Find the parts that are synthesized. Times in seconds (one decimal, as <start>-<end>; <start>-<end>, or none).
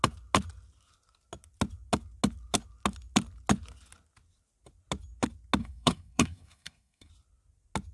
5.6-7.1